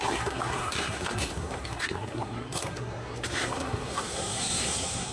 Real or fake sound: fake